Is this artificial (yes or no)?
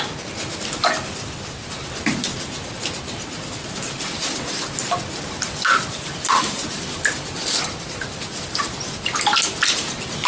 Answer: no